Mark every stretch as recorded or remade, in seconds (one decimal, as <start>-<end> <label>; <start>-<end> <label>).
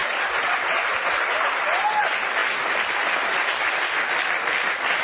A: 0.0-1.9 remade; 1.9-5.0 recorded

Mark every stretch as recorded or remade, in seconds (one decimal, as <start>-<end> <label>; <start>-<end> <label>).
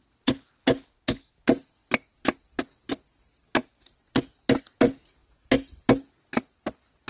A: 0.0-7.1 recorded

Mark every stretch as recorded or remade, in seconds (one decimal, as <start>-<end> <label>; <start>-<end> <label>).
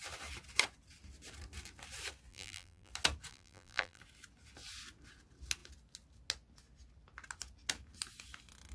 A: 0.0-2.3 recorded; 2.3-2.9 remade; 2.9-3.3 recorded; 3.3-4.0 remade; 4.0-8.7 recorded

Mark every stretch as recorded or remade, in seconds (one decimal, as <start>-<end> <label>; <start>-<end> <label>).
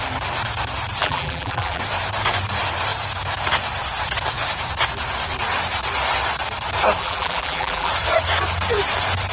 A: 0.0-1.0 recorded; 1.0-1.8 remade; 1.8-7.0 recorded; 7.0-7.9 remade; 7.9-9.3 recorded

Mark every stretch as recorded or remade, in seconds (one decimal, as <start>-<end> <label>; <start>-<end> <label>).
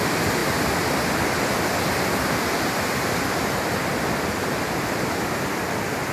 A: 0.0-6.1 recorded